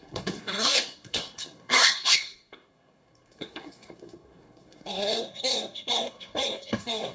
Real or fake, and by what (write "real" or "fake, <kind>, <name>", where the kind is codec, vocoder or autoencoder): fake, codec, SNAC